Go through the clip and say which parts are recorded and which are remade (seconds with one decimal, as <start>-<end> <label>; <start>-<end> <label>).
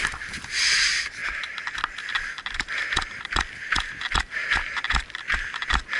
0.0-6.0 recorded